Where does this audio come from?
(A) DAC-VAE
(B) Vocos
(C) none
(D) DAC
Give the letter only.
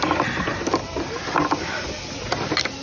C